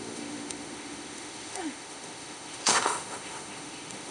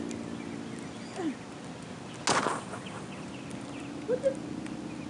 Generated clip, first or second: first